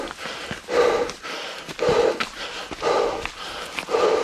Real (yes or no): yes